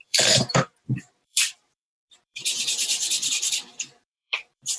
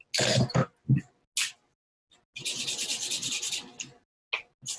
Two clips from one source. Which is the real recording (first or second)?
second